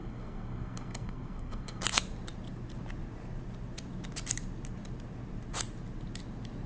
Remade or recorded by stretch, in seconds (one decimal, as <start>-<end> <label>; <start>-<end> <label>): 0.0-1.8 remade; 1.8-6.7 recorded